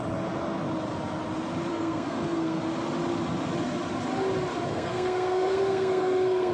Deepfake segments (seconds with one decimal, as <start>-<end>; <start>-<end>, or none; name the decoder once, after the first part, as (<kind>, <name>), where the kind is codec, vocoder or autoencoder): 1.7-2.6 (codec, SNAC); 4.7-6.5